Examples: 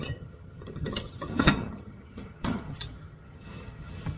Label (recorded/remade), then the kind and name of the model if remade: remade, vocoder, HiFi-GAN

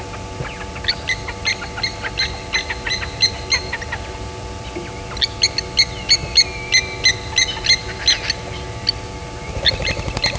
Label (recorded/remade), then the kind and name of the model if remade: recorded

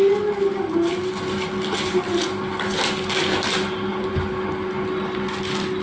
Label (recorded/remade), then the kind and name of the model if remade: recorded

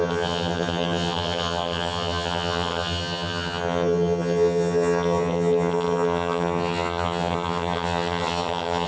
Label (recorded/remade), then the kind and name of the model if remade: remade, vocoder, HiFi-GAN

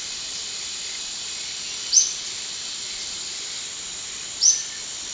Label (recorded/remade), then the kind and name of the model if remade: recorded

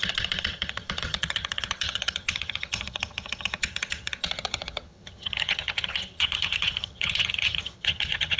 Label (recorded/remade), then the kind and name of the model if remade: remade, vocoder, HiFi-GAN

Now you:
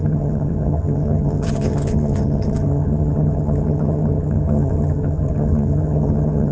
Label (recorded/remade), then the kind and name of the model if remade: remade, vocoder, HiFi-GAN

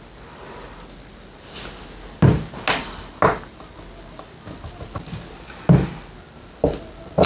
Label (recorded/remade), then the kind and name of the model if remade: recorded